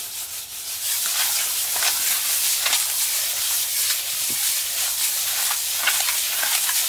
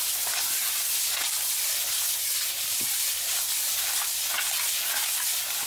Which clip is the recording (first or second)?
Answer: second